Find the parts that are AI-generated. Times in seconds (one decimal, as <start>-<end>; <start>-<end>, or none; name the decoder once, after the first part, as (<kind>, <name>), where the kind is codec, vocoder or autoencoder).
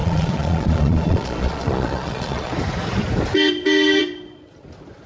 0.0-2.5 (vocoder, Vocos)